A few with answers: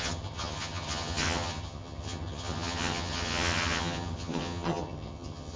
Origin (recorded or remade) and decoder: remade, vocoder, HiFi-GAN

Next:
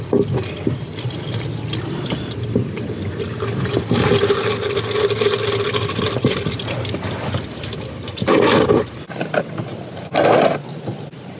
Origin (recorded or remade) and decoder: recorded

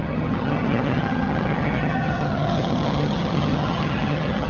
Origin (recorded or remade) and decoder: remade, vocoder, HiFi-GAN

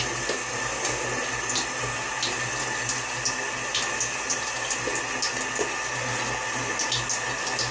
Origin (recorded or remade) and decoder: recorded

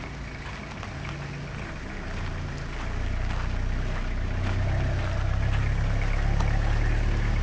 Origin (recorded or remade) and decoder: recorded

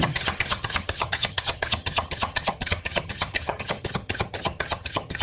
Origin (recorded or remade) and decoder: remade, vocoder, HiFi-GAN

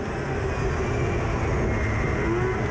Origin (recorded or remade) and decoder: recorded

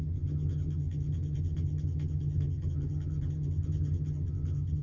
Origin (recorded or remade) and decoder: remade, vocoder, HiFi-GAN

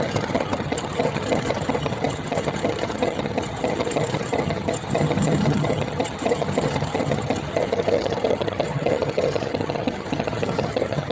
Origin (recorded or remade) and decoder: remade, vocoder, HiFi-GAN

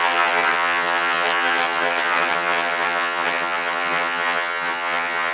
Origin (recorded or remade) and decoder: remade, vocoder, HiFi-GAN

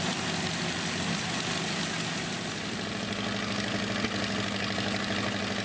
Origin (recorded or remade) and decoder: recorded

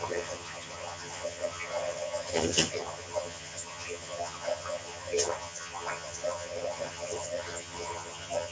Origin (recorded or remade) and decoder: remade, vocoder, HiFi-GAN